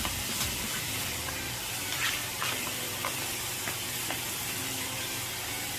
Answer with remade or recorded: remade